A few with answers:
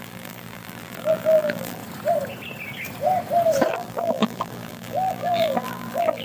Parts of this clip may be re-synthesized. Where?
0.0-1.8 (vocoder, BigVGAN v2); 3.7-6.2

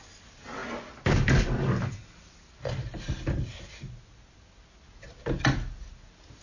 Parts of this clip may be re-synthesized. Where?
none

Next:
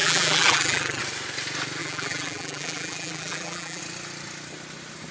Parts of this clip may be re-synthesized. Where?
0.0-1.0 (vocoder, BigVGAN v2); 1.8-3.8

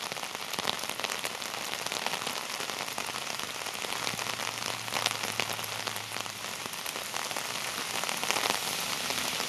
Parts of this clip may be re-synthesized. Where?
8.2-9.5 (vocoder, BigVGAN v2)

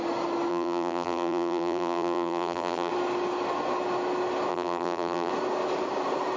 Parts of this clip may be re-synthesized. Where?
0.5-2.9 (vocoder, BigVGAN v2); 4.5-5.3

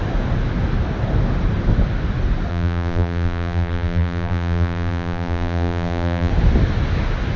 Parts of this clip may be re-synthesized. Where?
2.5-6.3 (vocoder, BigVGAN v2)

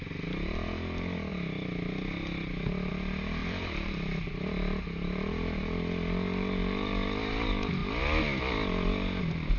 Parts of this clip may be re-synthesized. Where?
3.4-4.3 (vocoder, BigVGAN v2)